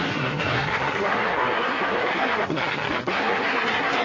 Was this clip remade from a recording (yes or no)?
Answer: yes